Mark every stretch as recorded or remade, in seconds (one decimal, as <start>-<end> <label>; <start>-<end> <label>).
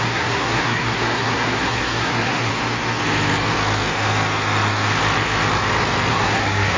0.0-2.5 remade; 2.5-6.1 recorded; 6.1-6.8 remade